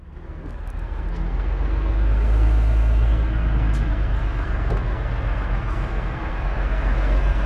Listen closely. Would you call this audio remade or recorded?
remade